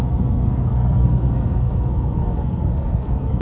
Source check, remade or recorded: remade